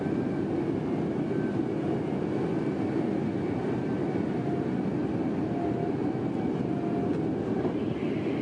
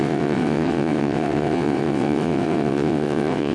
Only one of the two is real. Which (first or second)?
first